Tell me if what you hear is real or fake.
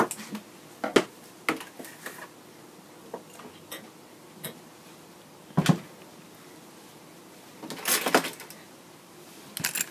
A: real